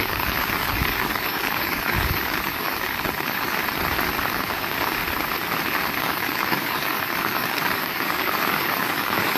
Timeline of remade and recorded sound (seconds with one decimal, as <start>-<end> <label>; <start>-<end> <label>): 0.0-3.6 remade; 3.6-4.3 recorded; 4.3-5.0 remade; 5.0-6.0 recorded; 6.0-9.4 remade